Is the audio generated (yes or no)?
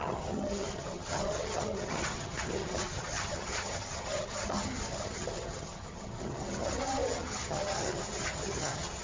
yes